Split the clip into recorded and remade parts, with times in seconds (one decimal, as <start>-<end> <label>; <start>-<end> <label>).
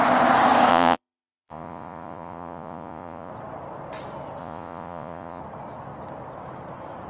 0.0-0.7 recorded; 0.7-3.3 remade; 3.3-4.4 recorded; 4.4-5.4 remade; 5.4-7.1 recorded